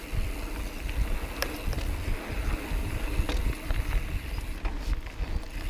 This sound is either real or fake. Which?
real